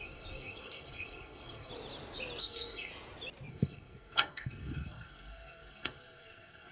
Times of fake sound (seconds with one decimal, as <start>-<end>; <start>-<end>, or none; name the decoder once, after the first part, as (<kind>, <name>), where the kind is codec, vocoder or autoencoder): 0.0-1.7 (codec, SNAC); 2.4-2.9; 3.5-6.7